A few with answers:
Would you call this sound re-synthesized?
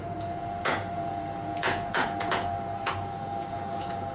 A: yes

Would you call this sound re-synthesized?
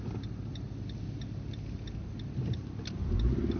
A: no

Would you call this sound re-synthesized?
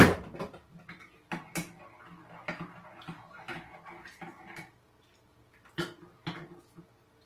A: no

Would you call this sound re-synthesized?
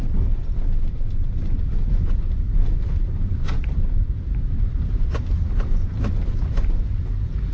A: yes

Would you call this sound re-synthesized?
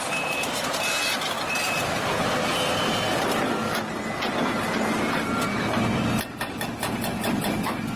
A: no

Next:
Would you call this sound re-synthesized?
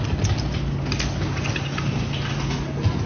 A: no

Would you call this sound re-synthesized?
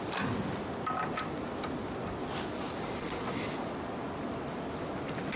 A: no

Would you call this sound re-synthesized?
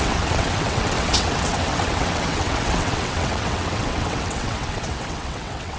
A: yes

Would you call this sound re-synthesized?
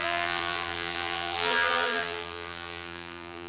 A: yes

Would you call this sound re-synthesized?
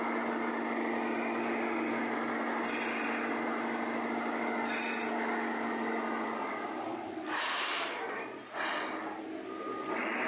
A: no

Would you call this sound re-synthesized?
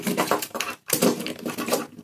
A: yes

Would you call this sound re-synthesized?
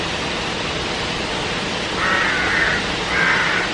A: no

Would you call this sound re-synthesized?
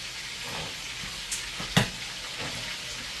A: no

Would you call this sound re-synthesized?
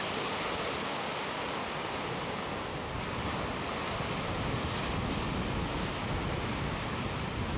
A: no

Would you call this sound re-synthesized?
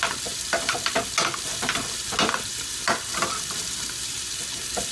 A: no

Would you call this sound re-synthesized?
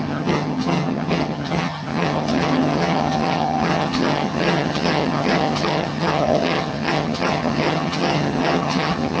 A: yes